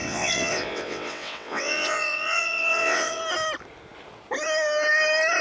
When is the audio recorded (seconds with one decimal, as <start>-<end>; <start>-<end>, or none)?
3.2-5.4